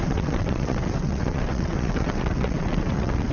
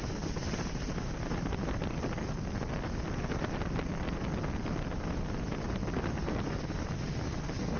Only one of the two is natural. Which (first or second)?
second